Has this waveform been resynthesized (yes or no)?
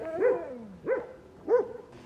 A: no